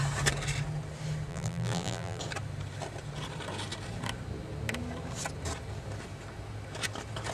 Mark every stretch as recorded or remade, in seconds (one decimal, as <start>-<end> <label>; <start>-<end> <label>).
0.0-1.3 recorded; 1.3-2.2 remade; 2.2-7.3 recorded